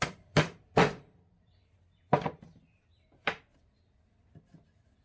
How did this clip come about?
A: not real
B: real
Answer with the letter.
A